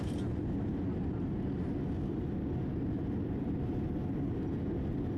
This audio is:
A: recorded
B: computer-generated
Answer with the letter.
A